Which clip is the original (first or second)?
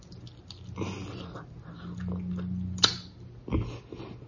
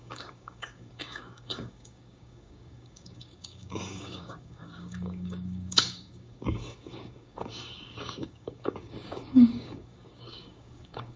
first